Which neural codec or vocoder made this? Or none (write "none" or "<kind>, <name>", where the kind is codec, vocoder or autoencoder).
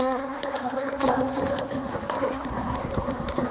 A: codec, SNAC